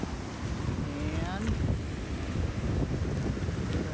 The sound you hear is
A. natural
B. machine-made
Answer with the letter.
A